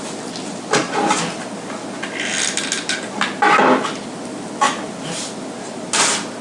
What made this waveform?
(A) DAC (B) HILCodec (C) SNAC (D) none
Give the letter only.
D